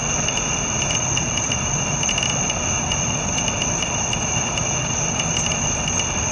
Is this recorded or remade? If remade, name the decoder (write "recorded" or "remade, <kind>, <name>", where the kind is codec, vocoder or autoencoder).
remade, vocoder, BigVGAN v2